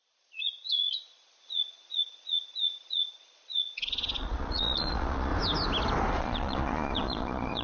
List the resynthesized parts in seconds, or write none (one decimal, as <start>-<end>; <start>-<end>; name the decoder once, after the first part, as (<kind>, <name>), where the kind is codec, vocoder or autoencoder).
0.0-5.3 (vocoder, Vocos); 6.2-7.6